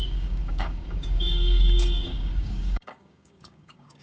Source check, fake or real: fake